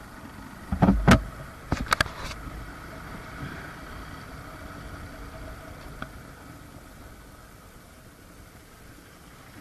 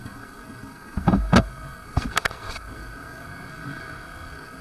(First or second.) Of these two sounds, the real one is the first